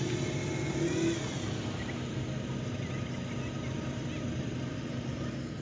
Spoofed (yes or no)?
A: no